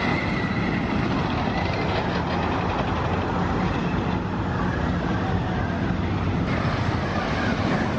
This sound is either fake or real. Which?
real